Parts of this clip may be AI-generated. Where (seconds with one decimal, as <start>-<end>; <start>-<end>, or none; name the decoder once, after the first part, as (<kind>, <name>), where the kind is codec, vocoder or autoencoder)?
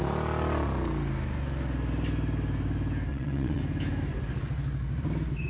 3.1-3.6 (vocoder, Vocos)